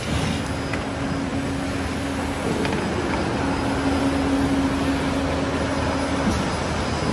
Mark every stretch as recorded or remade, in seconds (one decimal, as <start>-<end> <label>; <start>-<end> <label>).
0.0-7.1 recorded